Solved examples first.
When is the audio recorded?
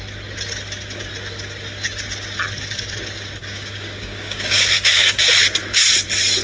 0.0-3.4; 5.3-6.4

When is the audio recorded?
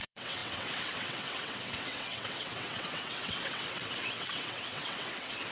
none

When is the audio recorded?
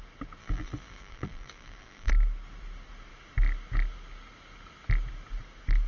0.0-0.4; 2.1-5.9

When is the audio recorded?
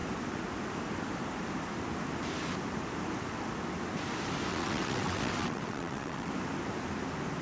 0.0-4.5; 6.3-7.4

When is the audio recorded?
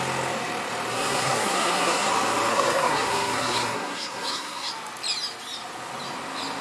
0.0-0.9; 2.1-2.5; 4.7-6.6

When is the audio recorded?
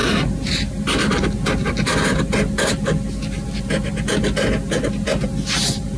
0.0-6.0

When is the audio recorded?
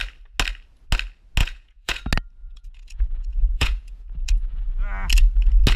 0.0-1.4; 2.0-2.4; 4.7-5.8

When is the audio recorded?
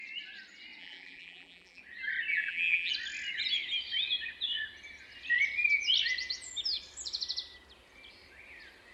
0.0-0.8; 1.8-2.3; 2.9-8.9